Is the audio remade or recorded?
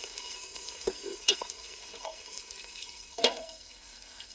remade